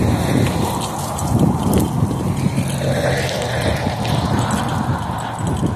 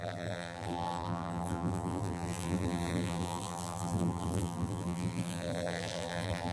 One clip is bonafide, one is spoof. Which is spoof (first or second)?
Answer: second